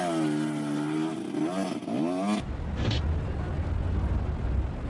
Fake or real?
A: real